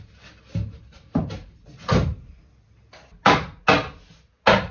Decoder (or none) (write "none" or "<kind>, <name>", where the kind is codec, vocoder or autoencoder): none